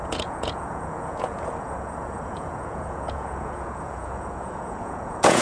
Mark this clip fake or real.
fake